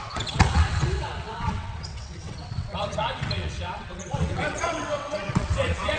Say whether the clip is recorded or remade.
remade